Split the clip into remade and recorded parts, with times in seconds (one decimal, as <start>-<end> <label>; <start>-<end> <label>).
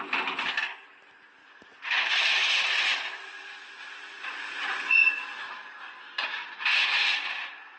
0.0-1.4 recorded; 1.4-3.1 remade; 3.1-3.8 recorded; 3.8-5.5 remade; 5.5-6.8 recorded; 6.8-7.8 remade